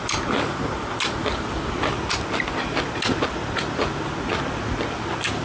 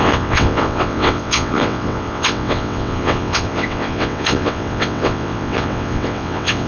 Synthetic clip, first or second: second